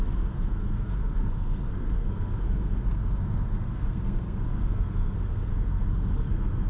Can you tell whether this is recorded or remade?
remade